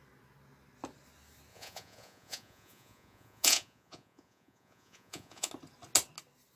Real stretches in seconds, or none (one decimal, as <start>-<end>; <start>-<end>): 0.0-1.5; 5.5-6.6

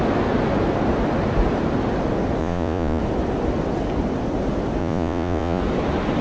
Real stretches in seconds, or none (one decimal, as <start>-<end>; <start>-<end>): 0.0-2.4; 3.0-4.8; 5.6-6.2